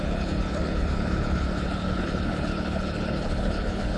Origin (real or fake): fake